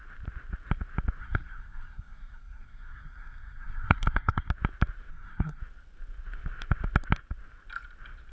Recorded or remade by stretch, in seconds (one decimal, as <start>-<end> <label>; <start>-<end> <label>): 0.0-1.2 recorded; 1.2-4.5 remade; 4.5-5.1 recorded; 5.1-5.6 remade; 5.6-8.3 recorded